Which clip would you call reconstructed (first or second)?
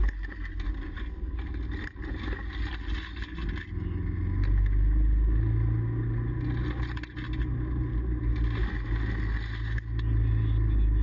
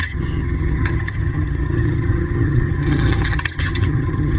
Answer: second